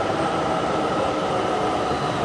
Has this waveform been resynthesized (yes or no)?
yes